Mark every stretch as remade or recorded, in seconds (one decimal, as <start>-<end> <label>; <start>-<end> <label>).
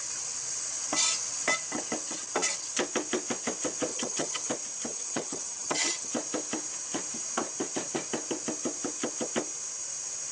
0.0-3.9 recorded; 3.9-4.5 remade; 4.5-4.9 recorded; 4.9-6.1 remade; 6.1-10.3 recorded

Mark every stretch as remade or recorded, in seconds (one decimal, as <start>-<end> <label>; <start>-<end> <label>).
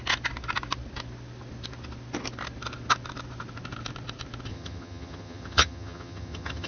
0.0-4.5 recorded; 4.5-6.7 remade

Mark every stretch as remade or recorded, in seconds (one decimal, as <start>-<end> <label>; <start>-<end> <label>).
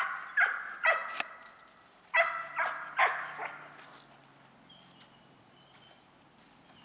0.0-6.8 recorded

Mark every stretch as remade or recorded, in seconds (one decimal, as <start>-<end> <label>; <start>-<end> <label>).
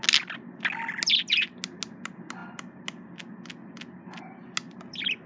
0.0-5.3 recorded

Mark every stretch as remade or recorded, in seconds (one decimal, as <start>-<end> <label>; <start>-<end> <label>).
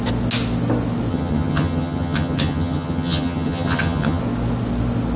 0.0-1.1 recorded; 1.1-4.2 remade; 4.2-5.2 recorded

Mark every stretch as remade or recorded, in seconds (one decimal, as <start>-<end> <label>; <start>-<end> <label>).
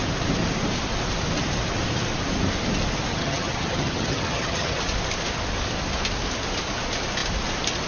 0.0-3.1 recorded; 3.1-4.8 remade; 4.8-7.9 recorded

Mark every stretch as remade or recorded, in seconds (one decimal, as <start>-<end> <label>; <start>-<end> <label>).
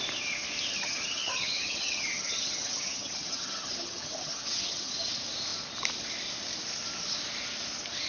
0.0-0.7 recorded; 0.7-4.9 remade; 4.9-8.1 recorded